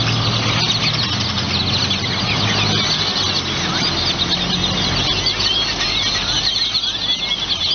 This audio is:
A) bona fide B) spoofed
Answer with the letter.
A